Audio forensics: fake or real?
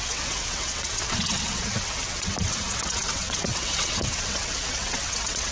fake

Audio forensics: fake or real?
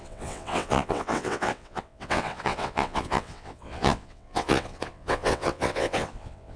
fake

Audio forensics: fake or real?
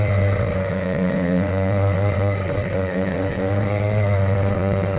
fake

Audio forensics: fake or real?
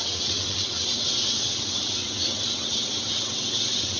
fake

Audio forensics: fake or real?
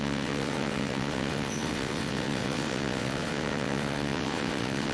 fake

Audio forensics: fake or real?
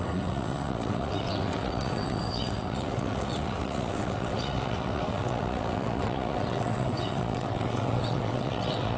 fake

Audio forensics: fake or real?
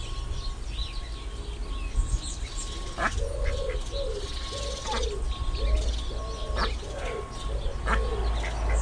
real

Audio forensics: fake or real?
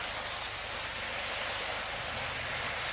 real